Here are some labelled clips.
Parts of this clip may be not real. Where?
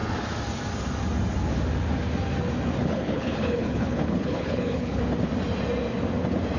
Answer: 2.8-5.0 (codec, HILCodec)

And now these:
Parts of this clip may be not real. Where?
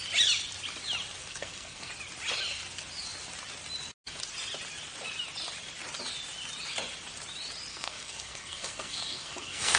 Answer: 1.2-1.9 (codec, SNAC); 7.7-9.8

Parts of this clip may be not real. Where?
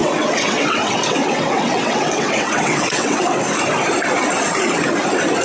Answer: 0.0-3.2 (vocoder, WaveNeXt)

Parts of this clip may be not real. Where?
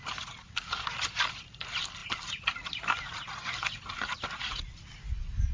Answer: 0.0-5.5 (vocoder, BigVGAN v2)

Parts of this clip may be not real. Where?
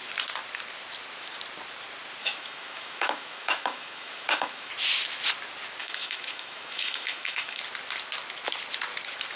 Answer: 2.2-4.7 (autoencoder, DAC-VAE); 5.8-7.6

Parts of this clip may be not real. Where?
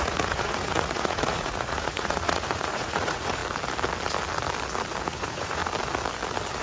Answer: 0.0-3.4 (vocoder, Vocos); 5.0-5.6